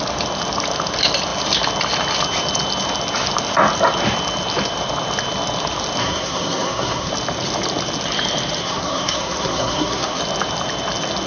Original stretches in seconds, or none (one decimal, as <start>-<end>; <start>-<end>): 0.0-6.0; 7.1-8.6; 10.2-11.3